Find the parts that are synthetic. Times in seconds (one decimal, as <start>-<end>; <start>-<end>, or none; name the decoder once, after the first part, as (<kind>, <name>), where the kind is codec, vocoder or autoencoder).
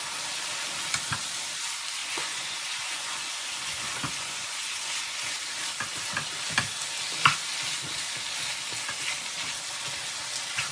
2.0-5.4 (vocoder, Vocos)